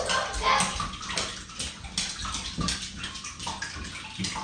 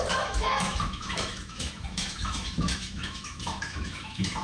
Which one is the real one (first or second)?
first